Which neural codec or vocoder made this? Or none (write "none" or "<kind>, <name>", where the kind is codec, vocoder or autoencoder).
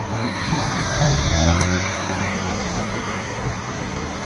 codec, SNAC